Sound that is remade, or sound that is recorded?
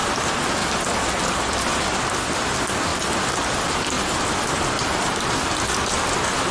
recorded